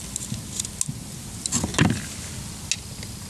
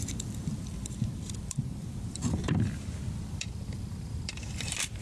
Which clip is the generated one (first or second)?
second